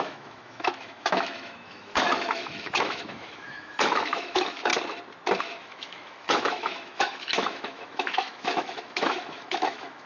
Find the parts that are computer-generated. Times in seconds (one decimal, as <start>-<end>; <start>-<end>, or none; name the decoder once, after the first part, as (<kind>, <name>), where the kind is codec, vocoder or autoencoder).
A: 0.0-4.7 (autoencoder, DAC-VAE); 5.4-10.1